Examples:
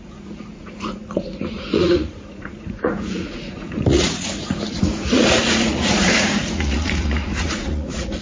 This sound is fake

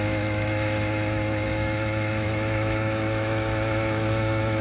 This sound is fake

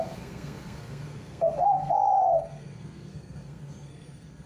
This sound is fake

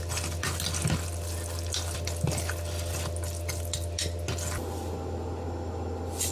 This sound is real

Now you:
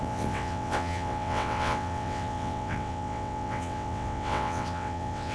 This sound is fake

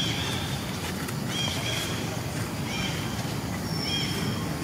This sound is real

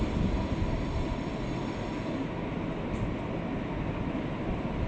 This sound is real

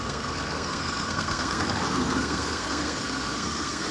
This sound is fake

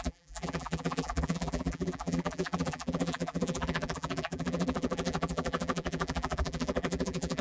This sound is fake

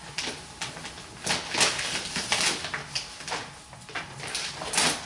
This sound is real